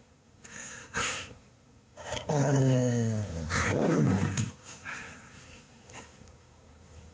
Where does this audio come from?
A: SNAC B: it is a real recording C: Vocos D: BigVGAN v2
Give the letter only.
A